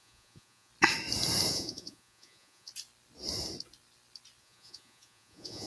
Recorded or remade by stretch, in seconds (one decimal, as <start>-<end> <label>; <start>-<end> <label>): 0.0-0.7 remade; 0.7-1.5 recorded; 1.5-2.7 remade; 2.7-4.4 recorded; 4.4-5.7 remade